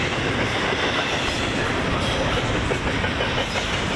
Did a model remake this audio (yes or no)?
no